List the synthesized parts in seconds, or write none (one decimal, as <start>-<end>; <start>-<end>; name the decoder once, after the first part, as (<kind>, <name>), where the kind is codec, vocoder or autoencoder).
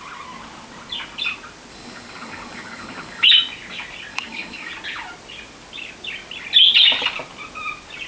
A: 1.7-3.3 (codec, DAC); 4.1-4.7